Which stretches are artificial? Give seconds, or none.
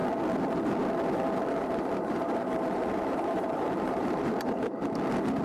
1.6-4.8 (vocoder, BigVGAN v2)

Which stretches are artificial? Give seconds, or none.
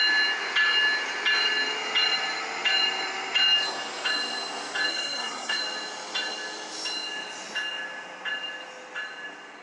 4.9-5.6 (codec, SNAC)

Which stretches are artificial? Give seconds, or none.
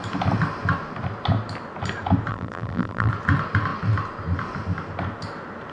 2.3-3.1 (vocoder, BigVGAN v2)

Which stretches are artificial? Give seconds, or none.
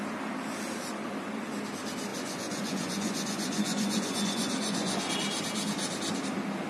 2.1-5.1 (vocoder, Vocos)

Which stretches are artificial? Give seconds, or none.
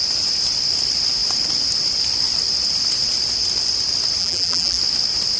4.2-4.8 (vocoder, BigVGAN v2)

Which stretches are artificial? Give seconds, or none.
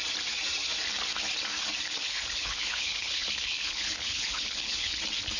2.0-5.0 (codec, HILCodec)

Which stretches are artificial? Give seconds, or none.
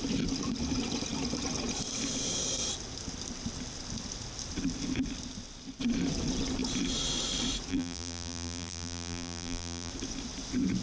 7.7-9.9 (vocoder, BigVGAN v2)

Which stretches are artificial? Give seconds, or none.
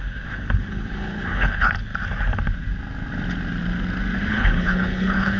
0.0-1.9 (codec, HILCodec); 4.3-5.4